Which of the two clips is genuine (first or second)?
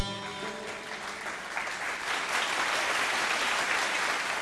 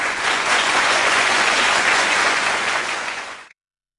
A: first